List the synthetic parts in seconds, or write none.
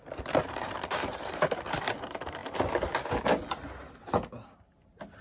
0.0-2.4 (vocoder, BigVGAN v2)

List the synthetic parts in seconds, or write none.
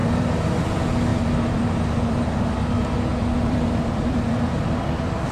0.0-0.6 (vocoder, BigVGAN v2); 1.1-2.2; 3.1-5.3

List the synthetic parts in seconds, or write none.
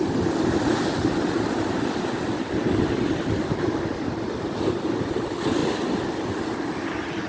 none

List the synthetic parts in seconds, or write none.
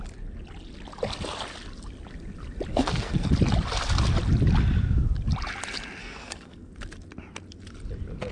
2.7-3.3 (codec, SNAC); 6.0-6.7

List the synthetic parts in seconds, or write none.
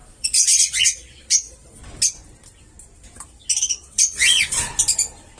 0.0-1.8 (vocoder, Vocos); 3.6-4.7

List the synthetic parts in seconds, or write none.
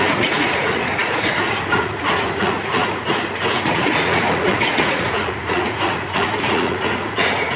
0.0-7.6 (vocoder, Vocos)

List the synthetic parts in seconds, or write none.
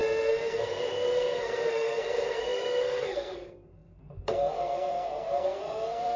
0.0-6.2 (codec, SNAC)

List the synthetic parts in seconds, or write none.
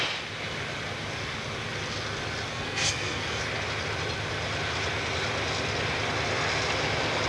2.5-3.4 (codec, SNAC)